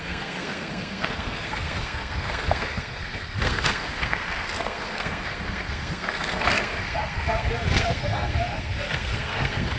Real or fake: fake